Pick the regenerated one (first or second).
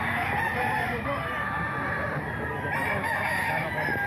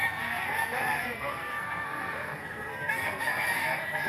second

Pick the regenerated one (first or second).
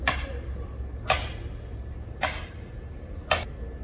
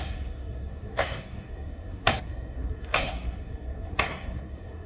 second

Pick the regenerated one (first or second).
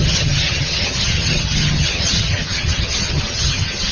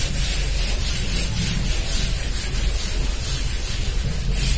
first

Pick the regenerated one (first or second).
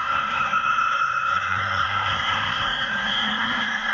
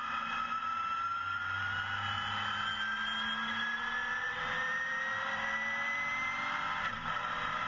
first